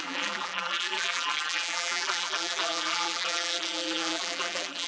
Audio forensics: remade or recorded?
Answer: remade